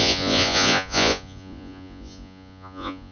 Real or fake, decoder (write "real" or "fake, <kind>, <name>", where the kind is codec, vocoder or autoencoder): fake, vocoder, Vocos